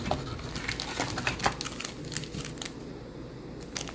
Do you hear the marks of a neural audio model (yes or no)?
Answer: no